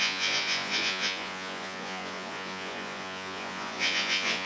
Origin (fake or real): fake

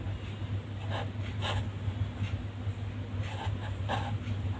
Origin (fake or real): real